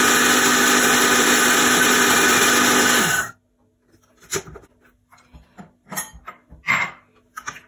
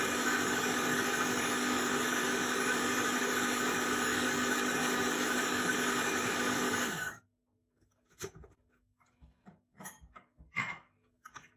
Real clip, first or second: first